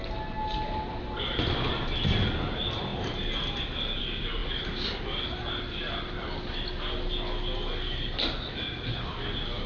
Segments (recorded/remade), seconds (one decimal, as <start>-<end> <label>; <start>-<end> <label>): 0.0-9.7 recorded